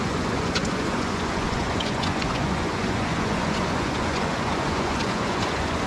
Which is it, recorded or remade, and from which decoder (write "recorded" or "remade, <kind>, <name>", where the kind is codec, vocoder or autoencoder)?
remade, vocoder, Vocos